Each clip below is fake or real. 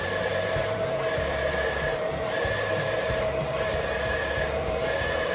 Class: fake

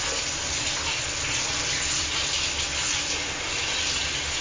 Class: real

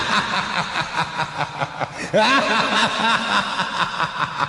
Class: fake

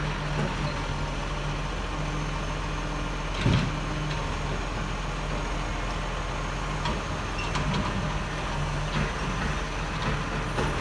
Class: real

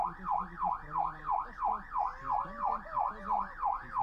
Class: real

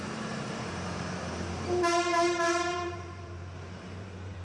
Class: fake